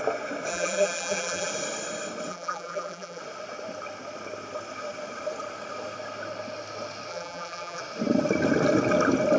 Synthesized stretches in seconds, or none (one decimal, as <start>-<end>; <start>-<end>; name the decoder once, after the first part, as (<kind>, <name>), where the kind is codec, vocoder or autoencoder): 0.5-1.5 (vocoder, BigVGAN v2); 2.3-3.2; 7.1-7.8